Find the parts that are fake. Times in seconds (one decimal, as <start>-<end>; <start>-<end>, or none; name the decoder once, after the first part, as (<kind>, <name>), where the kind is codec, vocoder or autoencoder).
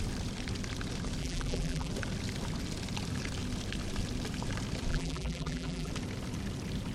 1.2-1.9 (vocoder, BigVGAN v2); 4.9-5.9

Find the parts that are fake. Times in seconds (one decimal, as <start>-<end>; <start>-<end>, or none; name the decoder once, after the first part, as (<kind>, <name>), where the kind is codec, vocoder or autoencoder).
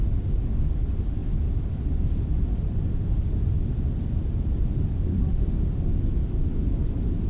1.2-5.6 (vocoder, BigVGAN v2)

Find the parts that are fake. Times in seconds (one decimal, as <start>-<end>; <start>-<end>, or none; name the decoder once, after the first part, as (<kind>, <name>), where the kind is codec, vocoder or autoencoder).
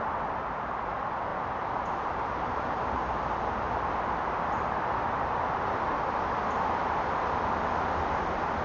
1.3-3.3 (vocoder, BigVGAN v2)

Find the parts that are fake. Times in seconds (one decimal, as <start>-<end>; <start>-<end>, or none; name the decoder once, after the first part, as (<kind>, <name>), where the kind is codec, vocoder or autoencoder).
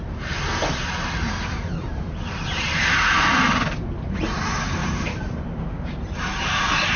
0.8-2.8 (vocoder, BigVGAN v2); 4.8-6.5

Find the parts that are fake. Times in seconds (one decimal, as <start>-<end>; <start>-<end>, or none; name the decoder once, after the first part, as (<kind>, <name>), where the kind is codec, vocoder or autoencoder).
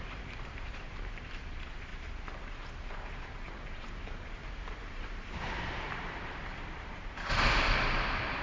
0.0-1.9 (vocoder, BigVGAN v2); 2.9-8.4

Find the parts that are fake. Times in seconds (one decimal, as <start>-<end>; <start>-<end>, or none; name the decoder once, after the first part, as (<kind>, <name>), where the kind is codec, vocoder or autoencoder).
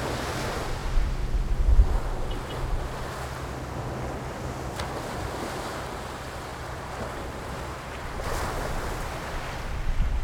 6.5-8.4 (vocoder, BigVGAN v2)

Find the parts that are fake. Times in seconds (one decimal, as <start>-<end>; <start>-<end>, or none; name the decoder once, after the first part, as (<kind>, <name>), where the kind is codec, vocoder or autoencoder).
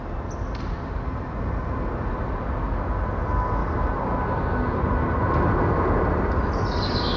3.6-4.1 (vocoder, BigVGAN v2)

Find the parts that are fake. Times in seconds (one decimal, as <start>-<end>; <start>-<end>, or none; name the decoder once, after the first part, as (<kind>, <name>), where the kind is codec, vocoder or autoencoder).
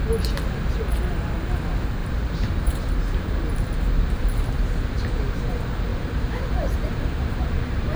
2.0-5.4 (vocoder, BigVGAN v2); 5.9-7.5